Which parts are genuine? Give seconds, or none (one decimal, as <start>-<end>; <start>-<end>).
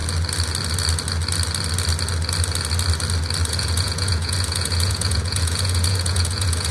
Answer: 0.0-3.5